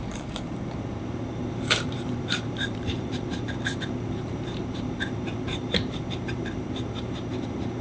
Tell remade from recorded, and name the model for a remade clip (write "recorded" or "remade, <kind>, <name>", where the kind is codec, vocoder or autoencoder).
remade, vocoder, BigVGAN v2